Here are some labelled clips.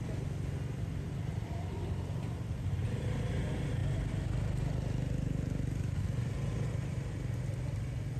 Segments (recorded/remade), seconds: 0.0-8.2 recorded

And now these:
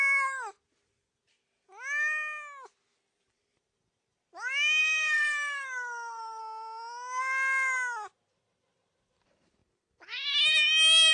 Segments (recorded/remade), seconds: 0.0-4.8 recorded; 4.8-6.4 remade; 6.4-11.1 recorded

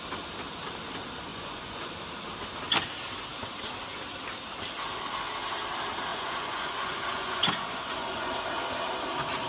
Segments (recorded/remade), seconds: 0.0-1.3 recorded; 1.3-1.9 remade; 1.9-6.1 recorded; 6.1-8.3 remade; 8.3-9.5 recorded

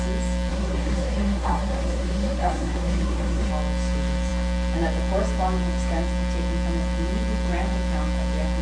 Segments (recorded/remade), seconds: 0.0-0.5 recorded; 0.5-3.5 remade; 3.5-8.6 recorded